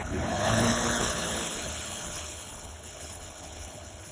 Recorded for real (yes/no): no